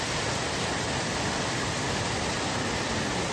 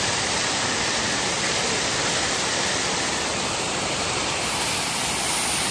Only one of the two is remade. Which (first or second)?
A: second